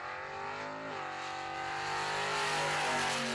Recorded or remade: recorded